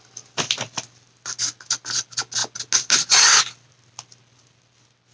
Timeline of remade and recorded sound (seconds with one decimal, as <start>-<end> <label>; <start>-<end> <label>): 0.0-5.1 recorded